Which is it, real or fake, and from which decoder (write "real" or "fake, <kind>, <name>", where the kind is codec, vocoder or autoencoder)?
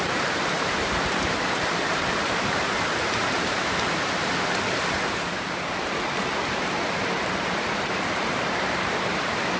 fake, vocoder, BigVGAN v2